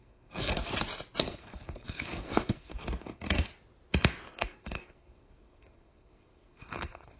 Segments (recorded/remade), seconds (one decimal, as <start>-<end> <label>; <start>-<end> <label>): 0.0-0.7 remade; 0.7-1.2 recorded; 1.2-3.5 remade; 3.5-4.3 recorded; 4.3-7.2 remade